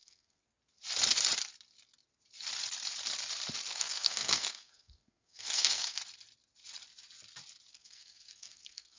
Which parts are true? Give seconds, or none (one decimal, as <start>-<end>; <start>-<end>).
0.4-3.7; 6.0-7.7